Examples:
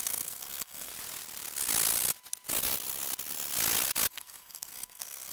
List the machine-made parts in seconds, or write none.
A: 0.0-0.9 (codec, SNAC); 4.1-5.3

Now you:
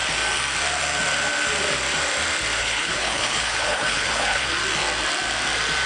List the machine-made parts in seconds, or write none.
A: 2.6-4.5 (codec, HILCodec)

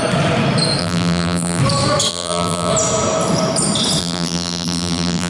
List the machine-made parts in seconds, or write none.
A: 0.8-1.6 (vocoder, BigVGAN v2); 2.1-2.7; 4.0-5.3

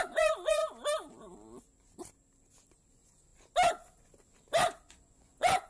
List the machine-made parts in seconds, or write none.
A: 0.0-0.6 (vocoder, Vocos); 2.9-3.3; 4.8-5.7

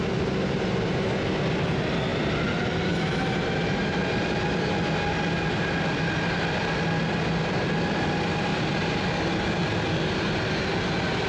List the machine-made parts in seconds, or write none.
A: 2.1-2.6 (vocoder, BigVGAN v2); 8.5-9.1

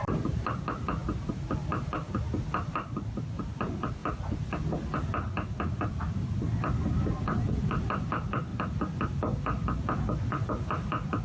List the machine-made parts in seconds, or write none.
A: 0.0-4.0 (vocoder, BigVGAN v2); 7.8-8.5; 10.5-11.2